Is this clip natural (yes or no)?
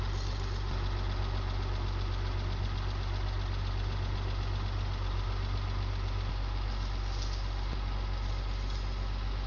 yes